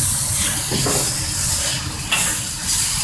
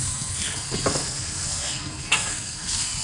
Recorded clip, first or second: first